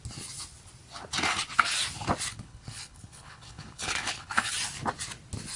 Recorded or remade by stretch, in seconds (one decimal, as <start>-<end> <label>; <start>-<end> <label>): 0.0-2.3 recorded; 2.3-4.5 remade; 4.5-5.6 recorded